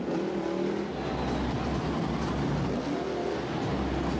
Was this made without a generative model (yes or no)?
yes